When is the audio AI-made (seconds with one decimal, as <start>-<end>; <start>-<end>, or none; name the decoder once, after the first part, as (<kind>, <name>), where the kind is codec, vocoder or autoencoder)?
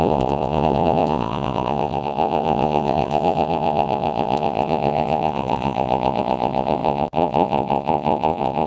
0.0-8.7 (vocoder, Vocos)